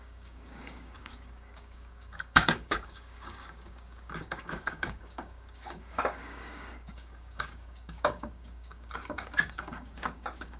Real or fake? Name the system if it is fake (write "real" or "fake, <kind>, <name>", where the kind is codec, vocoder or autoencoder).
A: fake, codec, DAC